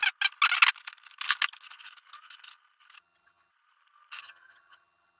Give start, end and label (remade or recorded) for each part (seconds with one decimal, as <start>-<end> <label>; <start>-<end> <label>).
0.0-3.0 recorded; 3.0-3.5 remade; 3.5-4.2 recorded; 4.2-5.2 remade